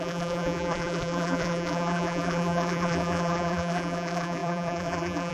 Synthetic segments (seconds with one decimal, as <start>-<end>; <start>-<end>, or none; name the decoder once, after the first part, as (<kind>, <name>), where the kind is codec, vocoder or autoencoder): 0.0-5.3 (vocoder, BigVGAN v2)